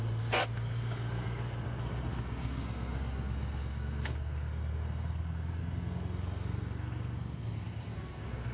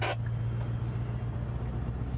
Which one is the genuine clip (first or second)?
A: second